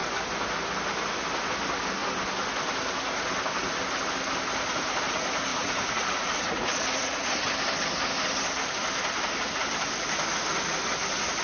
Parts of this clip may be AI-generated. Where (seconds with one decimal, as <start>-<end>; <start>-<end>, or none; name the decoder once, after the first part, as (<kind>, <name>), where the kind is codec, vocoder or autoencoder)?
5.5-7.5 (vocoder, Vocos)